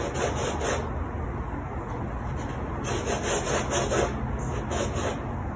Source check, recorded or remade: recorded